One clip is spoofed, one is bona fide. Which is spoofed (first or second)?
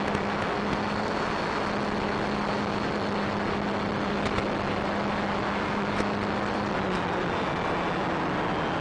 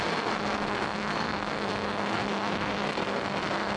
second